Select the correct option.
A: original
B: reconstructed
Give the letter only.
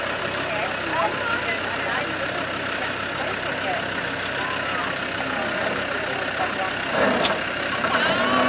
A